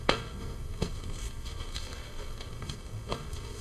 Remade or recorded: remade